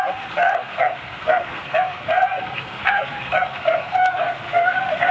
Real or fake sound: fake